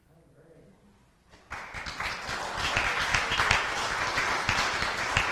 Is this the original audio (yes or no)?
yes